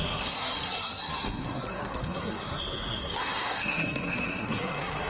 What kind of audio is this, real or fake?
fake